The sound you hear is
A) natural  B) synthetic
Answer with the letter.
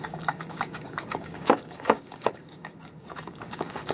B